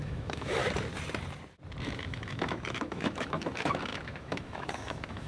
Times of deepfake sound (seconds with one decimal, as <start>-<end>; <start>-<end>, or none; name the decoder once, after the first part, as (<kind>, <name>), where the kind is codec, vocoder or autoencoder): 0.0-0.6 (autoencoder, DAC-VAE); 1.8-5.3